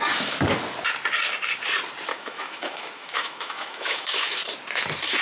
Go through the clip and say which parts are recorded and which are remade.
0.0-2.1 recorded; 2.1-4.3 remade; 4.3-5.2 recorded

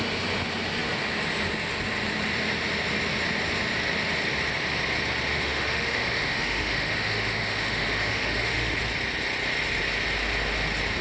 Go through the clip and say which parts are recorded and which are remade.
0.0-5.3 recorded; 5.3-8.8 remade; 8.8-11.0 recorded